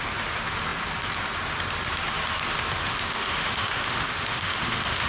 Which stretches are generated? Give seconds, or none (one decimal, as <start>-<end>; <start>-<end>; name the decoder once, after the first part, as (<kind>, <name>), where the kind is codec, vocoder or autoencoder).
2.8-5.1 (autoencoder, DAC-VAE)